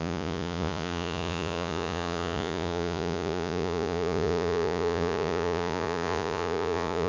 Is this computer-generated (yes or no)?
yes